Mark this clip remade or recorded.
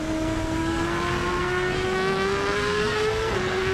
remade